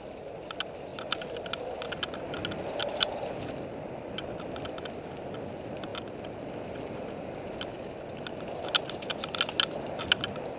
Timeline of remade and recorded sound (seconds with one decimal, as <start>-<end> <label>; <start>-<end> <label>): 0.0-10.6 recorded

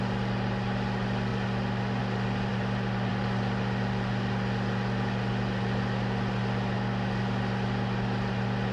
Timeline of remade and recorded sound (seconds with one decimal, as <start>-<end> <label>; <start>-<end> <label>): 0.0-8.7 recorded

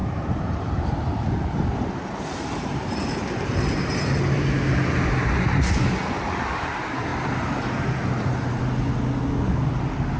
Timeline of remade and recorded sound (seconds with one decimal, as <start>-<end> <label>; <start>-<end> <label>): 0.0-4.7 remade; 4.7-7.1 recorded; 7.1-8.6 remade; 8.6-10.2 recorded

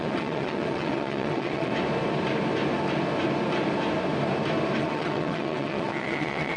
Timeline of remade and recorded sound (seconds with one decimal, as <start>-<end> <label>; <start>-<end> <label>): 0.0-1.7 remade; 1.7-4.8 recorded; 4.8-6.6 remade

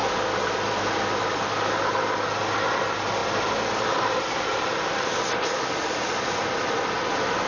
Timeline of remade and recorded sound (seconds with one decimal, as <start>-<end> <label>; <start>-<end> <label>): 0.0-7.5 recorded

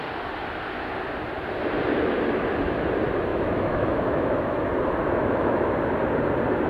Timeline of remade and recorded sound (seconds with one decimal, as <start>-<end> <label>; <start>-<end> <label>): 0.0-3.3 recorded; 3.3-4.7 remade; 4.7-5.2 recorded; 5.2-5.9 remade; 5.9-6.7 recorded

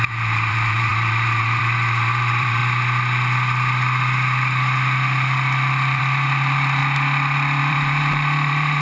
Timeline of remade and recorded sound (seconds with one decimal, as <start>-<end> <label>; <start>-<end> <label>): 0.0-2.6 remade; 2.6-6.0 recorded; 6.0-6.8 remade; 6.8-7.6 recorded; 7.6-8.8 remade